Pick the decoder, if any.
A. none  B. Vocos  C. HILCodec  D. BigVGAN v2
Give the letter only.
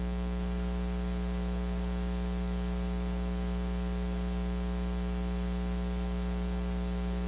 A